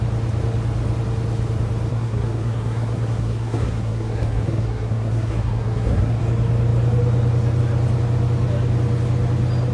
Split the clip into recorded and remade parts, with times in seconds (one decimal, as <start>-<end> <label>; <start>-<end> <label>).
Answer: 0.0-1.9 recorded; 1.9-6.2 remade; 6.2-9.7 recorded